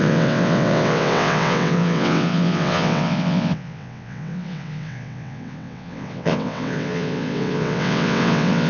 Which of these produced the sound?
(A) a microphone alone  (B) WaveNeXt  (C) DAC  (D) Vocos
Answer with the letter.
B